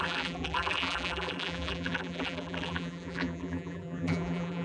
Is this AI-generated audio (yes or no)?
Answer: yes